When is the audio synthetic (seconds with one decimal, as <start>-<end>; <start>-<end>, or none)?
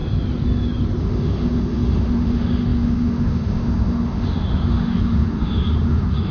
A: 1.0-6.3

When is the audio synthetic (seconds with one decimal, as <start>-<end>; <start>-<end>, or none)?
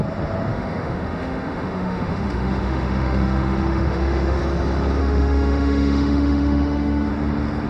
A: 0.5-4.4; 5.0-7.1